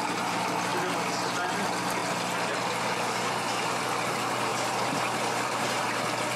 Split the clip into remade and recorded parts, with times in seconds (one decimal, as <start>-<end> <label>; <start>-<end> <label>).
0.0-4.5 recorded; 4.5-5.8 remade; 5.8-6.4 recorded